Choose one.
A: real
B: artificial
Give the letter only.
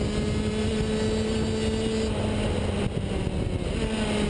A